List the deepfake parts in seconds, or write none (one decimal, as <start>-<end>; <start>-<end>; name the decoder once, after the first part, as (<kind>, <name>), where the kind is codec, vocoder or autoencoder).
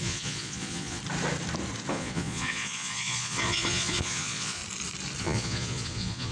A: 0.0-1.0 (vocoder, Vocos); 1.9-4.6; 5.2-6.3